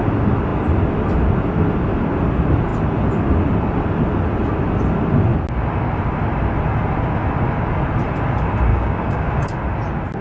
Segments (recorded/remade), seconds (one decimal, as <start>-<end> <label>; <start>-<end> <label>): 0.0-8.7 recorded; 8.7-9.3 remade; 9.3-10.2 recorded